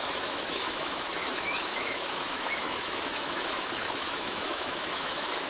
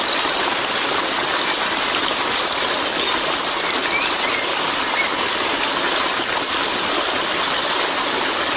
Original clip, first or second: second